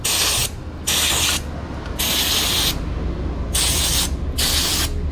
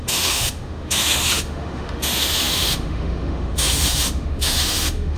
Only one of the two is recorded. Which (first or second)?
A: first